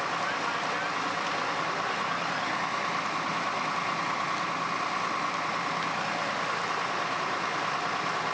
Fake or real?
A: real